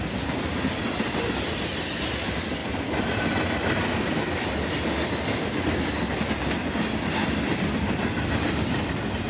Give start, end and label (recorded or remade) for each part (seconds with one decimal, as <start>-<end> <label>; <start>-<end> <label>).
0.0-9.3 recorded